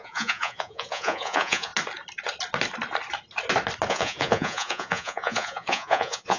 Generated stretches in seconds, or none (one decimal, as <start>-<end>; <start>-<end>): 0.0-1.7; 3.9-6.4